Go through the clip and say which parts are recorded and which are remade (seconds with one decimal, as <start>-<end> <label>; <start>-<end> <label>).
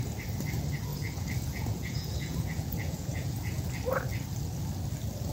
0.0-0.9 recorded; 0.9-3.7 remade; 3.7-5.3 recorded